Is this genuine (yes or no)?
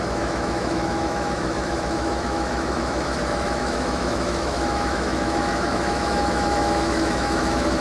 no